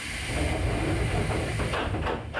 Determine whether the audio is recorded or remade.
recorded